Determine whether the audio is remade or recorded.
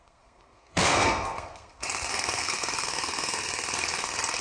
remade